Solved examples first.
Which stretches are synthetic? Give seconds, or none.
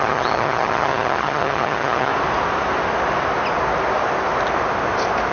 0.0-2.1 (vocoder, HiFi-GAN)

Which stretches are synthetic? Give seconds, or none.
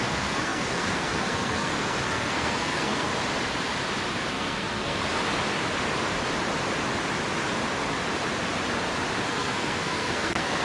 0.0-3.1 (codec, SNAC); 4.3-5.0; 9.3-10.6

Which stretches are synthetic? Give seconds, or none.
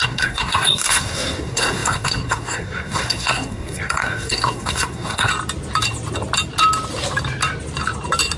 0.0-5.3 (codec, SNAC)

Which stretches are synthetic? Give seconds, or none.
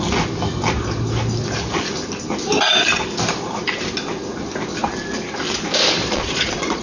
6.0-6.8 (vocoder, Vocos)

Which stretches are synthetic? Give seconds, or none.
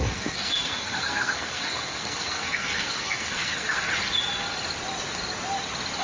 0.0-3.9 (codec, SNAC)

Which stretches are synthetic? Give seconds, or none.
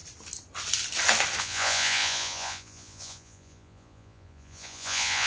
1.4-5.3 (vocoder, Vocos)